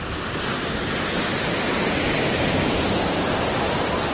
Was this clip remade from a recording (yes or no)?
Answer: no